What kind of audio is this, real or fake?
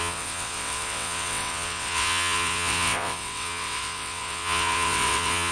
fake